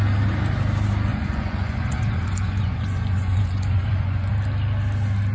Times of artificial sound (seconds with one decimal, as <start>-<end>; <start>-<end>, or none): 1.1-4.3